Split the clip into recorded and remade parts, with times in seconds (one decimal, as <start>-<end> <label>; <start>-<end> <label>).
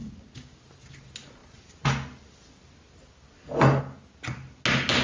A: 0.0-0.6 remade; 0.6-5.0 recorded